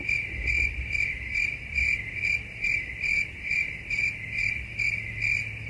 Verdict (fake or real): real